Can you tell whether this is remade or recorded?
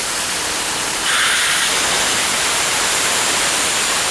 recorded